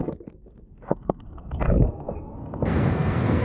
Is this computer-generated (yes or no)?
yes